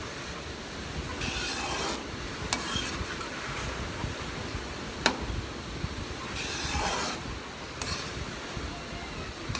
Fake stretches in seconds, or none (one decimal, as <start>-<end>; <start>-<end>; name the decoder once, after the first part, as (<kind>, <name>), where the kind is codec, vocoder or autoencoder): none